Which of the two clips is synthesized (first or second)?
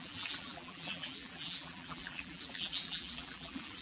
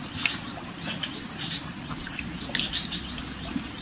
first